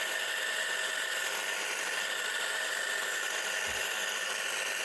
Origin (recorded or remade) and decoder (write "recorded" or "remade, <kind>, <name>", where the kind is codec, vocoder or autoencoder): recorded